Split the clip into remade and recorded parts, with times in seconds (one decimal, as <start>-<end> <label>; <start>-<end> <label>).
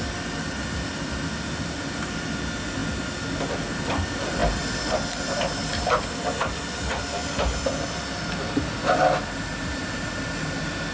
0.0-10.9 recorded